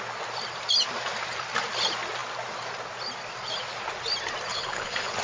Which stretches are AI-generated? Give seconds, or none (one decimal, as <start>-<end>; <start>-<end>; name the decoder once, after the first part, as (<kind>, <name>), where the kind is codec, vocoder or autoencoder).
4.5-5.2 (codec, HILCodec)